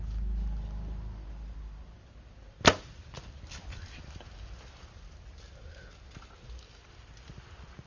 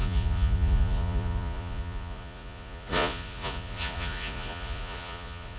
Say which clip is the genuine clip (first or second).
first